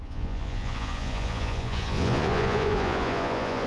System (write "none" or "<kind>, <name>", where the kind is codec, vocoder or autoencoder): vocoder, Vocos